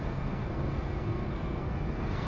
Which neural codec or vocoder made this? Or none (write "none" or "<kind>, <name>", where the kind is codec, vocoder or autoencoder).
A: codec, SNAC